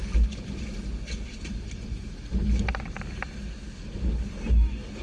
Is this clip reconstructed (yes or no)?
no